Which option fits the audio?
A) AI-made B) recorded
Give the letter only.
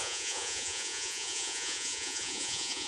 A